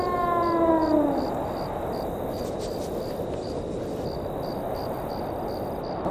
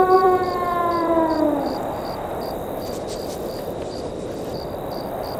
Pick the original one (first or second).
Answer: first